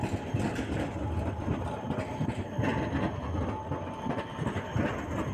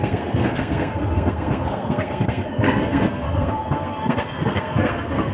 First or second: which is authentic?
first